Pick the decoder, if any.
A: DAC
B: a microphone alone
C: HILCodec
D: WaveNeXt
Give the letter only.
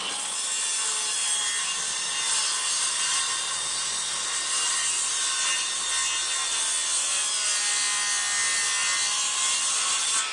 B